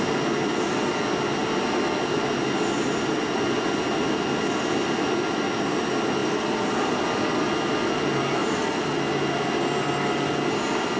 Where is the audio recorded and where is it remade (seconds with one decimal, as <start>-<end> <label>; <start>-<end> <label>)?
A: 0.0-6.2 recorded; 6.2-6.9 remade; 6.9-8.4 recorded; 8.4-9.1 remade; 9.1-11.0 recorded